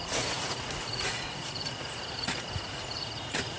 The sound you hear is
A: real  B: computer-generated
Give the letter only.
B